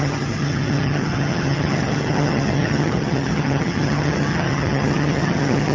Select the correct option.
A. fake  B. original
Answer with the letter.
A